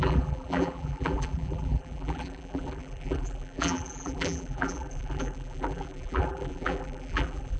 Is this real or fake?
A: fake